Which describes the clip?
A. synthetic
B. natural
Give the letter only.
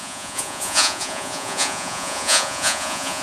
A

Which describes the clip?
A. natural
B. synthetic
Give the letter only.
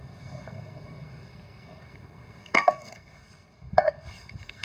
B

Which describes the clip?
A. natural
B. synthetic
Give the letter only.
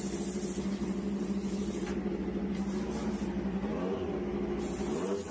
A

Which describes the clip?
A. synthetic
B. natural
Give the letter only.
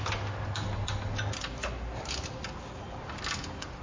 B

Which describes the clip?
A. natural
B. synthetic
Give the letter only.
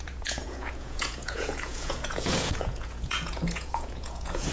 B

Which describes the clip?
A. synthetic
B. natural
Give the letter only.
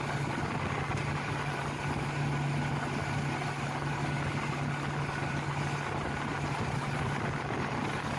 B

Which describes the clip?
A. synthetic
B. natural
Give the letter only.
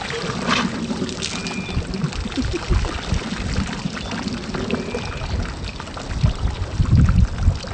B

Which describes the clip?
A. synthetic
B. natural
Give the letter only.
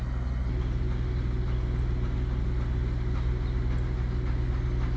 B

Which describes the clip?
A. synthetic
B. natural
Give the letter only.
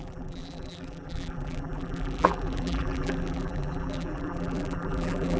A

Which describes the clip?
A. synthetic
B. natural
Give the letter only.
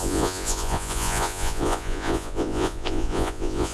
A